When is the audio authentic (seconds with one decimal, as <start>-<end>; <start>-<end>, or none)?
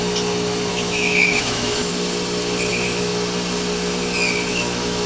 0.0-0.7; 1.9-2.7; 3.1-4.5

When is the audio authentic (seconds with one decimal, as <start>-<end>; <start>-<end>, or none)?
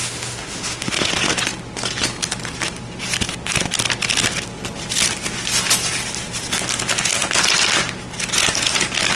1.1-9.2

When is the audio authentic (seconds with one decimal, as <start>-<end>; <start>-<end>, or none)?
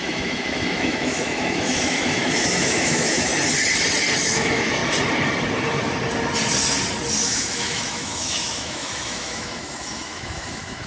3.3-4.2; 4.8-7.2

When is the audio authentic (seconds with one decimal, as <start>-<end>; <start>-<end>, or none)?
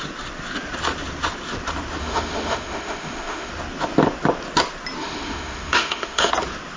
0.0-2.0; 3.5-5.0; 6.3-6.8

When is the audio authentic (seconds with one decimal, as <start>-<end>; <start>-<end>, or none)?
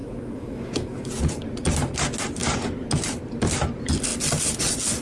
1.1-5.0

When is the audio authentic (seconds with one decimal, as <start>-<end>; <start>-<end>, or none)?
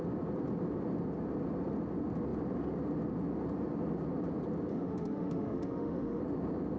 0.0-4.7; 6.2-6.8